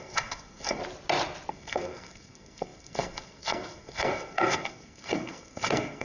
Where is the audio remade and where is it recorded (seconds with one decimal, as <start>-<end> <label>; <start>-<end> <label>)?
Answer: 0.0-0.8 remade; 0.8-1.5 recorded; 1.5-6.0 remade